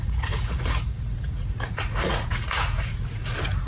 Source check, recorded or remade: remade